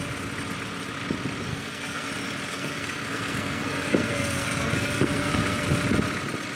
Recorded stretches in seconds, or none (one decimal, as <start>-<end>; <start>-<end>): 0.0-1.5; 2.1-2.5; 5.7-6.6